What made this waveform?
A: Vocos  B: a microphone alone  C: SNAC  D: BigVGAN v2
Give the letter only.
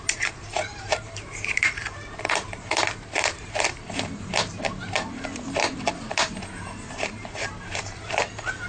D